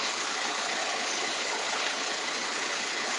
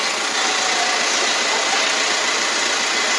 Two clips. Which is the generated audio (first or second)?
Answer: first